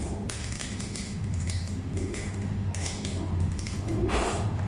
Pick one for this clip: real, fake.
fake